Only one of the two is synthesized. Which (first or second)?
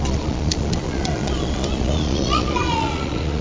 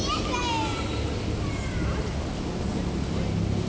first